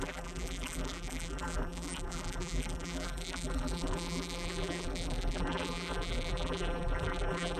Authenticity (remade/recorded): remade